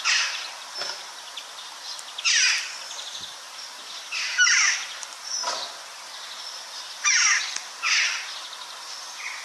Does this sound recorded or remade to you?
recorded